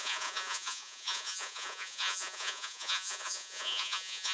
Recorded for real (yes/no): no